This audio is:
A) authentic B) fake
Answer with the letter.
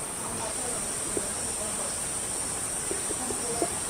B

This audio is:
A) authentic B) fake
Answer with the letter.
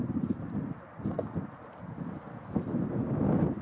A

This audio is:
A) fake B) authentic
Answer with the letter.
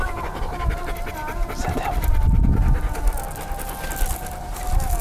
B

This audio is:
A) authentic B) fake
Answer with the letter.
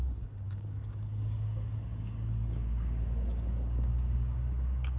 B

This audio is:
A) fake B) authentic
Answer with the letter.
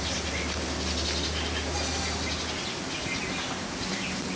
B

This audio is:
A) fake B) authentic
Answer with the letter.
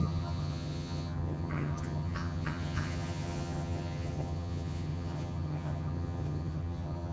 A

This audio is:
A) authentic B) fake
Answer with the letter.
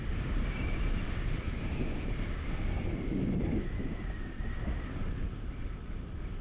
A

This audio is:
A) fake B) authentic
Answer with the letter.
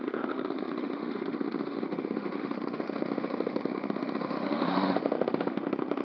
A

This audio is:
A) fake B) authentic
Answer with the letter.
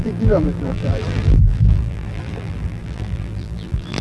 A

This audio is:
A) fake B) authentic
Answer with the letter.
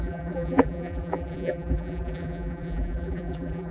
A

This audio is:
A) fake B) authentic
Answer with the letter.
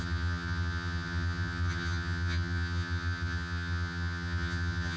A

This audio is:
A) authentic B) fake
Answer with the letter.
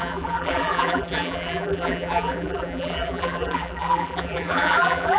B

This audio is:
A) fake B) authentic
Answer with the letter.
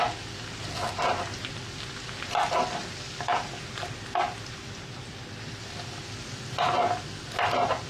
B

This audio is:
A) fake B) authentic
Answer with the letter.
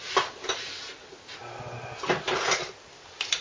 B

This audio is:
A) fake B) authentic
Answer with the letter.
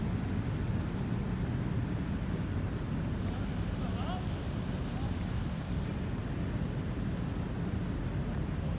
B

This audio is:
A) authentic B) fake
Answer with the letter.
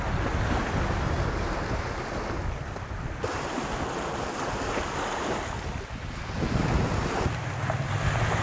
A